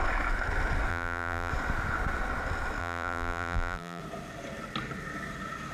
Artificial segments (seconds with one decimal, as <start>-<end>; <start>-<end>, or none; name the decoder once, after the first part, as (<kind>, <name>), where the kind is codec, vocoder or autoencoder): 0.9-1.5 (vocoder, BigVGAN v2); 2.8-4.0